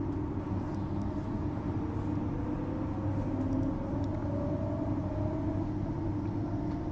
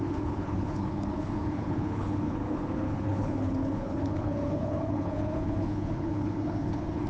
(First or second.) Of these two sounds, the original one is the first